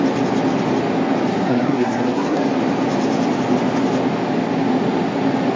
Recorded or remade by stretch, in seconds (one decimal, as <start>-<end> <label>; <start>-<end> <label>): 0.0-1.3 recorded; 1.3-2.5 remade; 2.5-5.6 recorded